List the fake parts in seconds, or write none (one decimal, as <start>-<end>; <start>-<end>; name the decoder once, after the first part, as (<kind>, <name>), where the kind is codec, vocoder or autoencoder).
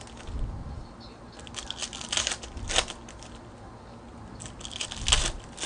none